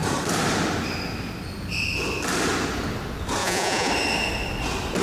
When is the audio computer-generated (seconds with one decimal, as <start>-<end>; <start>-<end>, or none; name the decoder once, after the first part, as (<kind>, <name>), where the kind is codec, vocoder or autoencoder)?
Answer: 3.4-3.9 (vocoder, Vocos)